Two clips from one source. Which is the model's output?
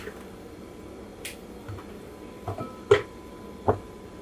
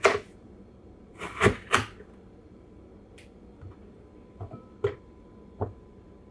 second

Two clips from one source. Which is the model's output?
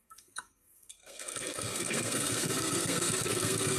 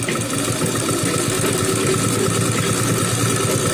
first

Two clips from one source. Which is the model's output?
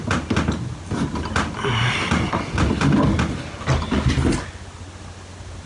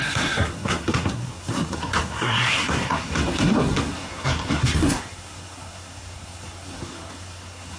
second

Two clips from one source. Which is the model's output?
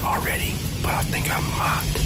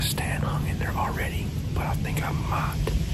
first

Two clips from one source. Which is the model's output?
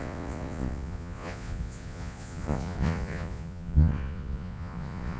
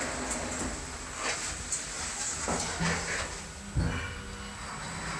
first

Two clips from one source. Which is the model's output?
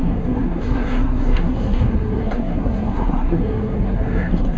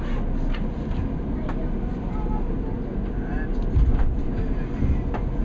first